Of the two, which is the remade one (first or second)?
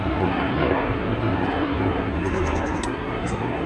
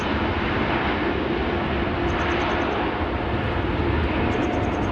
first